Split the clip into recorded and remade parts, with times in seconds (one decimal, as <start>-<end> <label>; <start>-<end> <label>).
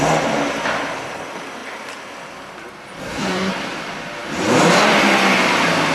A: 0.0-3.0 recorded; 3.0-3.5 remade; 3.5-5.9 recorded